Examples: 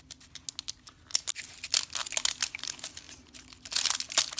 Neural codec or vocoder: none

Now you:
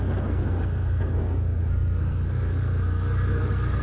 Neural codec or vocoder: codec, SNAC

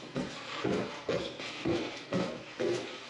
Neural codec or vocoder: codec, SNAC